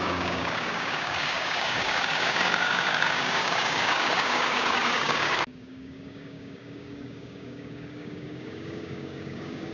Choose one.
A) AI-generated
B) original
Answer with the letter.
A